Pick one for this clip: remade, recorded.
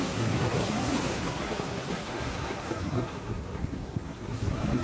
remade